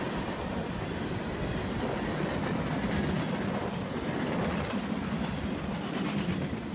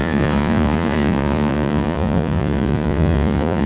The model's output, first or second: second